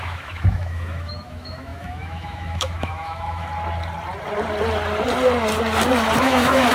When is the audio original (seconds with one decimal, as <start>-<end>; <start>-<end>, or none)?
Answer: 3.5-6.2